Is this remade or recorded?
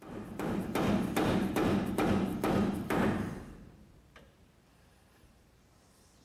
remade